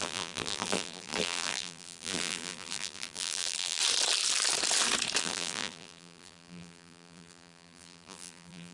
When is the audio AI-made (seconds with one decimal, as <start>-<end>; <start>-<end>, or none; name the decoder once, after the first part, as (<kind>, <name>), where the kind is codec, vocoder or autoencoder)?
0.0-3.8 (vocoder, BigVGAN v2); 5.2-8.7